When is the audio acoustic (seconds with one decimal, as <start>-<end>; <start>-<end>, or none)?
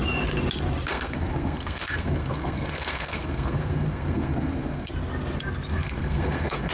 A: 0.0-0.9; 4.9-5.7